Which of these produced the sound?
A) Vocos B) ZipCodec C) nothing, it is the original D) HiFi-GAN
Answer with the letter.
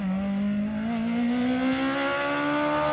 C